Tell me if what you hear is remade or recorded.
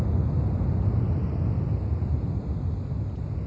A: recorded